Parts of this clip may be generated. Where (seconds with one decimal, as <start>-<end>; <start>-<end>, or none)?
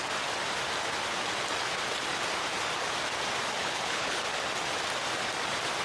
3.6-4.2